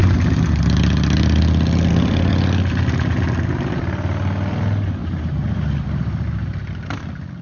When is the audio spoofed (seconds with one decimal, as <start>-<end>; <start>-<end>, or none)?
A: 5.0-6.6